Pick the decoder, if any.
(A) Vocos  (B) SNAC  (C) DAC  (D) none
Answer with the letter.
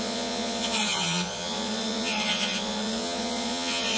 A